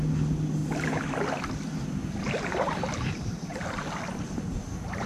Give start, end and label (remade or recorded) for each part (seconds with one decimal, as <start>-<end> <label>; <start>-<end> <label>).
0.0-5.1 recorded